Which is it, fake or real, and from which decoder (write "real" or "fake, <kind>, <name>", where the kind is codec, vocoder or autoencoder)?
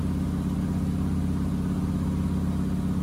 real